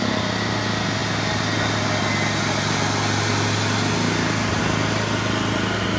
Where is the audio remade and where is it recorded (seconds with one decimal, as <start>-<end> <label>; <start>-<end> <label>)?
0.0-6.0 recorded